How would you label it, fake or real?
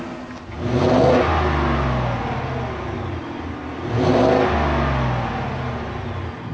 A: real